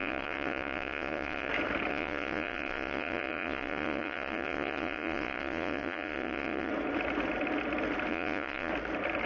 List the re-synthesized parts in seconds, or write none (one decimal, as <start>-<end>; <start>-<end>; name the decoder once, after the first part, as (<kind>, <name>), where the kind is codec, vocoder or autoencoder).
0.0-1.5 (vocoder, Vocos); 1.9-6.7; 8.1-8.7